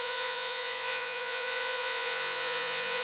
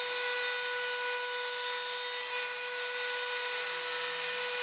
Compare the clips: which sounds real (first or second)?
second